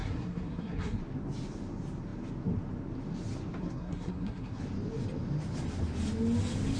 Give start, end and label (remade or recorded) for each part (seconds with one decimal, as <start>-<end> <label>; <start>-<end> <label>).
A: 0.0-1.0 remade; 1.0-3.6 recorded; 3.6-4.6 remade; 4.6-6.8 recorded